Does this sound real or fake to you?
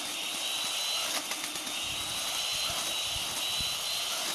real